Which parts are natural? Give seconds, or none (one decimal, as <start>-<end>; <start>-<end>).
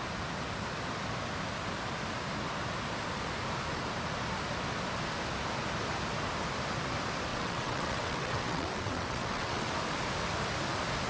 0.0-7.3; 9.7-11.1